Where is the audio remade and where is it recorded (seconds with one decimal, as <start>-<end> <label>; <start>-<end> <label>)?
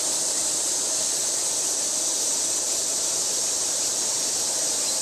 0.0-1.2 remade; 1.2-4.1 recorded; 4.1-5.0 remade